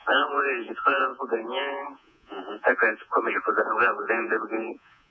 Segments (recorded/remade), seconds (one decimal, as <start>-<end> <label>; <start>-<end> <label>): 0.0-5.1 remade